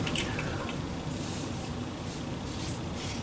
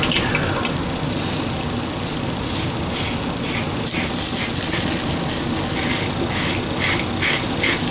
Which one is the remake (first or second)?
first